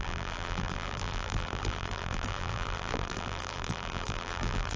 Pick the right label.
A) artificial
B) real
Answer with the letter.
A